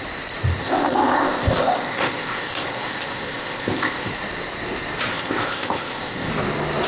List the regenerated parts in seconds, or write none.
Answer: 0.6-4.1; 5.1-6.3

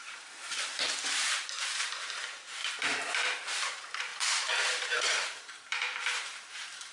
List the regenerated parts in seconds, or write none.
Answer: 0.0-2.6; 3.1-6.9

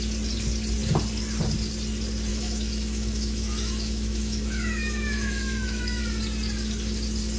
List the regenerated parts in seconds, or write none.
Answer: 2.3-6.0

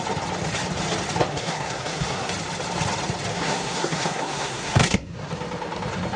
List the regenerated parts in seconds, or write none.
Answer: 1.3-2.3; 3.3-5.3

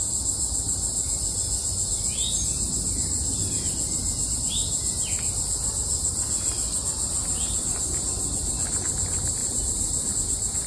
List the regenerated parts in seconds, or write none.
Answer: 9.4-10.1